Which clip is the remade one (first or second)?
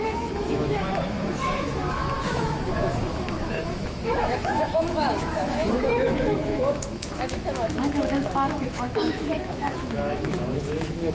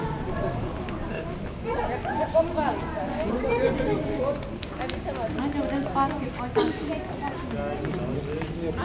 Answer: first